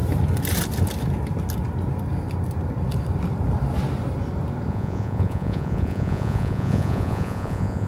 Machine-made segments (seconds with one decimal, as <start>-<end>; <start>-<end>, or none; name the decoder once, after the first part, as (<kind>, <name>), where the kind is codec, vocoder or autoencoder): 4.7-7.9 (vocoder, Vocos)